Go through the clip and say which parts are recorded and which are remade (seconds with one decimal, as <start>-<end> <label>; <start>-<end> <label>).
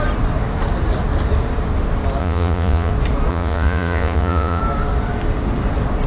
0.0-2.2 recorded; 2.2-2.9 remade; 2.9-3.3 recorded; 3.3-4.6 remade; 4.6-6.1 recorded